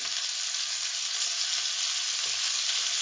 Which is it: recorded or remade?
recorded